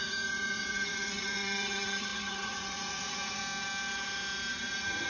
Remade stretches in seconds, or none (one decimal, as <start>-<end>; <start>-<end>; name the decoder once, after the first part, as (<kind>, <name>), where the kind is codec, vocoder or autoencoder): 0.0-3.4 (vocoder, Vocos); 4.5-5.1